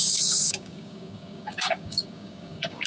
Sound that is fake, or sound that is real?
fake